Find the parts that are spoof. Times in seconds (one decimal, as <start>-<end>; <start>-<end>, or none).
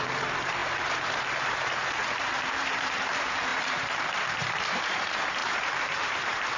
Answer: 0.0-6.6